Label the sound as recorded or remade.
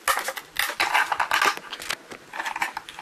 recorded